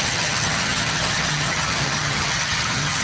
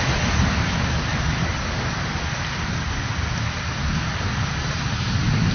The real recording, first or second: second